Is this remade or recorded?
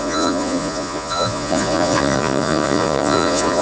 remade